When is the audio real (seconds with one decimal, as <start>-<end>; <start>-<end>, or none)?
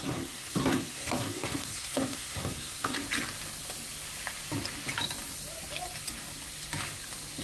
3.0-7.4